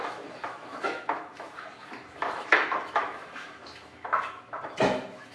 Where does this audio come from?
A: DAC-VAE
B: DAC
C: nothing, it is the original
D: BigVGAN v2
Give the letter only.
A